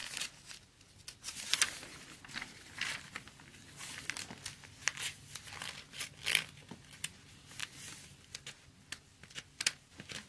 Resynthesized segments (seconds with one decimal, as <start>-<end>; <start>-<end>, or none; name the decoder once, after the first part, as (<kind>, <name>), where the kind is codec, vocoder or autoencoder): none